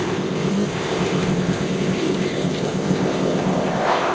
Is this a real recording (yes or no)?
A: no